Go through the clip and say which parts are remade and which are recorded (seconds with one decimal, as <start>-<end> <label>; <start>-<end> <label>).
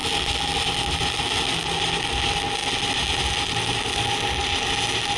0.0-5.2 recorded